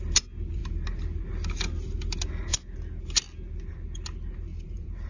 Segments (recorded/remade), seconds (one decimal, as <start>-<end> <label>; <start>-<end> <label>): 0.0-4.5 recorded; 4.5-5.1 remade